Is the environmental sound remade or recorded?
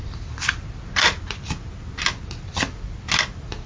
recorded